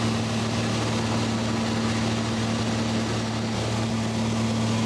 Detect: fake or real real